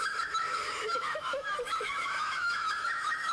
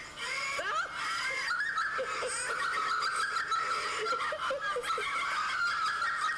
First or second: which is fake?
first